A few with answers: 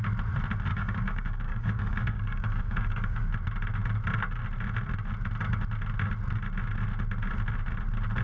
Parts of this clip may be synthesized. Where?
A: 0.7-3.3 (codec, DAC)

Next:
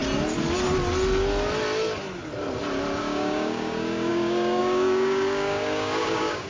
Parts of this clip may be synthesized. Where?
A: 3.0-6.5 (codec, DAC)

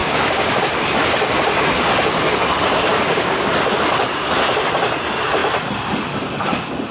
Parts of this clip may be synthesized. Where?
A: 0.0-0.6 (codec, DAC); 2.9-3.5